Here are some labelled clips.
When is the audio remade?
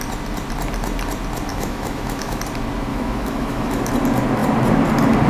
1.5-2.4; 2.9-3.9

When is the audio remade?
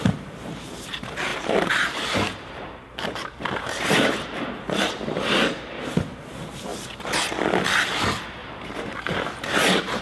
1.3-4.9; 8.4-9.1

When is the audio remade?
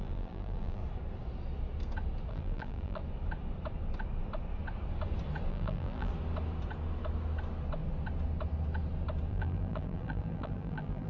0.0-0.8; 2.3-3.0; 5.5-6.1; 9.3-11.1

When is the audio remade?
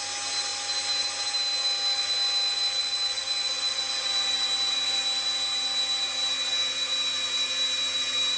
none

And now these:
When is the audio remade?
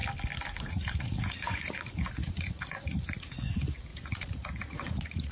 0.7-5.3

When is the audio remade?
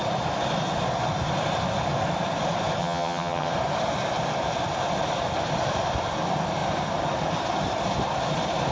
2.8-3.5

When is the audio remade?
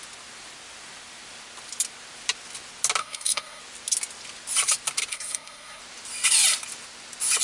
3.0-3.6; 5.1-5.8